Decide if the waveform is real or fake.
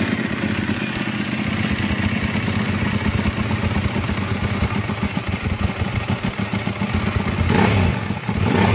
real